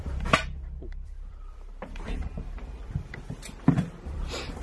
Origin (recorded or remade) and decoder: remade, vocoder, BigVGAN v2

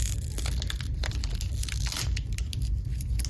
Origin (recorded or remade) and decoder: recorded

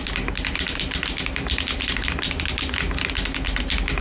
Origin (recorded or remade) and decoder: recorded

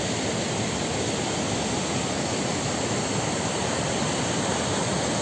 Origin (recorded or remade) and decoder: recorded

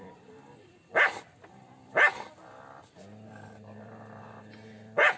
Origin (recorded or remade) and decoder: recorded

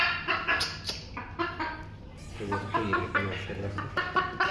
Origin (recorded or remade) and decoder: recorded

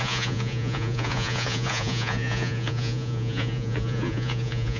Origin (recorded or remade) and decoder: remade, vocoder, Vocos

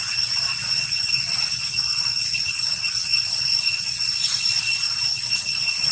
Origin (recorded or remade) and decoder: remade, vocoder, Vocos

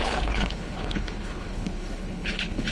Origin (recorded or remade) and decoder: remade, codec, HILCodec